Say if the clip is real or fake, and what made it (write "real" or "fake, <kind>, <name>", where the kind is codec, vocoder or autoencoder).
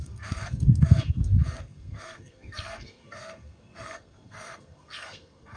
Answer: fake, codec, SNAC